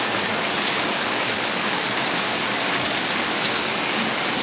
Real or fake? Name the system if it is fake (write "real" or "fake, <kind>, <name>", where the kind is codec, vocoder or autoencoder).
fake, codec, DAC